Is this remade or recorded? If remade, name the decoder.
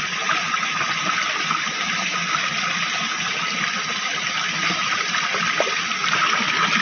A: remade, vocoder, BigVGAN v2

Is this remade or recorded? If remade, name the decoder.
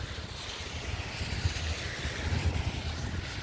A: recorded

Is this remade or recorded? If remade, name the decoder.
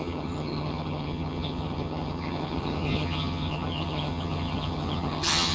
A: remade, vocoder, HiFi-GAN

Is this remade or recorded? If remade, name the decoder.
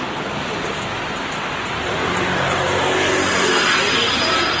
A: recorded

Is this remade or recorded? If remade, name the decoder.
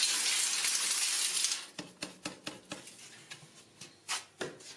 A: recorded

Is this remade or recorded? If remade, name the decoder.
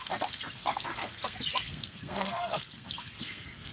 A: remade, codec, SNAC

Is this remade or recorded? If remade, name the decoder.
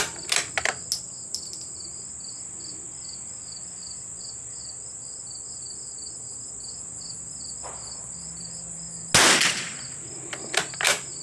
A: recorded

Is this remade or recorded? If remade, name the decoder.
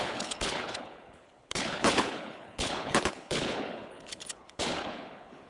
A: remade, codec, HILCodec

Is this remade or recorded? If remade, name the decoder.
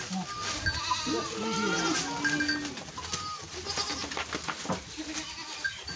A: recorded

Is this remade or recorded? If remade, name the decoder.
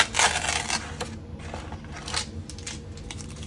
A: recorded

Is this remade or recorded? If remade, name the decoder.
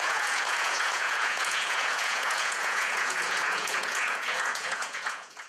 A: remade, vocoder, Vocos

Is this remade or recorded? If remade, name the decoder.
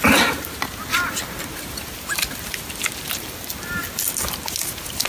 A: recorded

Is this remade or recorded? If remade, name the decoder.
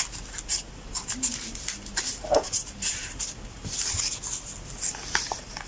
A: recorded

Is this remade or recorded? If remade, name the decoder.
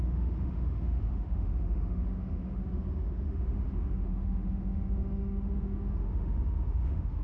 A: remade, autoencoder, DAC-VAE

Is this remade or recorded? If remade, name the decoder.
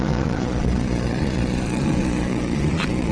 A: remade, vocoder, Vocos